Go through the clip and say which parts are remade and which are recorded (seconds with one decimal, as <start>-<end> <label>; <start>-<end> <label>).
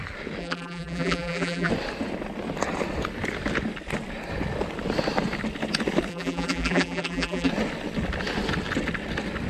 0.0-0.4 recorded; 0.4-1.7 remade; 1.7-6.1 recorded; 6.1-7.5 remade; 7.5-9.5 recorded